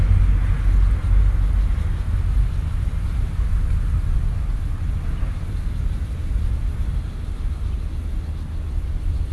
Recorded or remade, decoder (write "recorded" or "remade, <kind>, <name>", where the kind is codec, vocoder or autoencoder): recorded